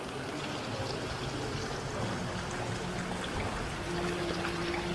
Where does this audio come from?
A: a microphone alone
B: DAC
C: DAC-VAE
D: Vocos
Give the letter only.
A